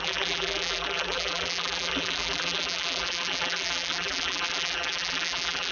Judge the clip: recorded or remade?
remade